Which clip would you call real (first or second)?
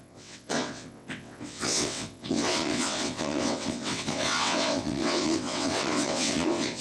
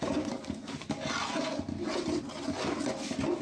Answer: second